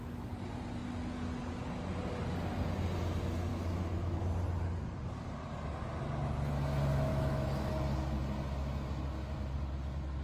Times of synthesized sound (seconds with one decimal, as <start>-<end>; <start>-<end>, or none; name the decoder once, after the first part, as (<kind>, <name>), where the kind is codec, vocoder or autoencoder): 3.5-4.2 (autoencoder, DAC-VAE); 7.1-7.7